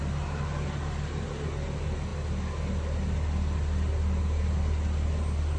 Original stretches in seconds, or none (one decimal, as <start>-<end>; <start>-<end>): 0.0-5.6